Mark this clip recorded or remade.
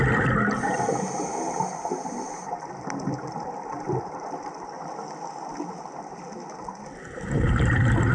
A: recorded